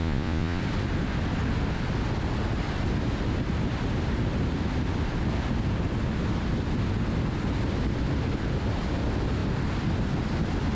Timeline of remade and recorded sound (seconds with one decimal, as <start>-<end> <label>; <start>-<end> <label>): 0.0-0.6 remade; 0.6-10.8 recorded